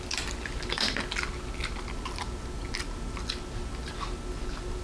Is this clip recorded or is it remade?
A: recorded